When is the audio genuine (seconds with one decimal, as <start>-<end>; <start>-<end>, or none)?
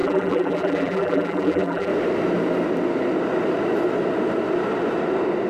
1.9-5.5